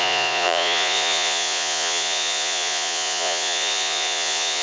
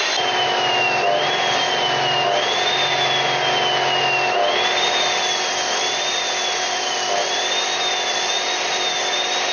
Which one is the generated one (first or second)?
first